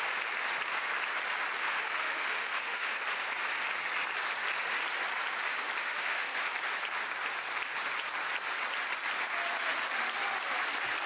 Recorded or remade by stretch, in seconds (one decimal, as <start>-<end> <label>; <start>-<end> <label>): 0.0-1.6 recorded; 1.6-3.0 remade; 3.0-5.8 recorded; 5.8-6.5 remade; 6.5-11.1 recorded

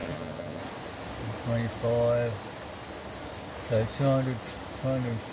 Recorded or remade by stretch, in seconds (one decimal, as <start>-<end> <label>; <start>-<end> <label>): 0.0-0.6 remade; 0.6-5.3 recorded

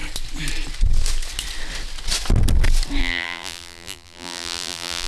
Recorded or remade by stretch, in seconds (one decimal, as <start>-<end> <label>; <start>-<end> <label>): 0.0-3.0 recorded; 3.0-5.1 remade

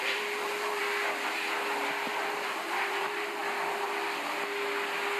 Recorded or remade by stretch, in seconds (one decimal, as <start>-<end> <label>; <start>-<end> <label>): 0.0-0.8 remade; 0.8-2.1 recorded; 2.1-3.4 remade; 3.4-5.2 recorded